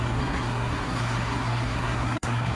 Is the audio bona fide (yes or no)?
no